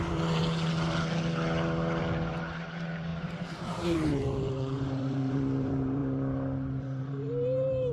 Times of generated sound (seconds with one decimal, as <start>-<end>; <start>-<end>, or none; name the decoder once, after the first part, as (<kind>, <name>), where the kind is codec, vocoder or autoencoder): 0.0-0.4 (vocoder, BigVGAN v2); 2.0-7.9